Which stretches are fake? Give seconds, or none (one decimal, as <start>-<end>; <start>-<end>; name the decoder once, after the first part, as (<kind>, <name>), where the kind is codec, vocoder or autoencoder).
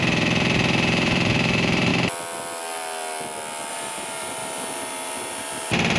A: 0.0-1.9 (vocoder, BigVGAN v2); 3.7-6.0